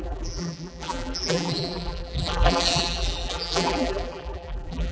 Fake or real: fake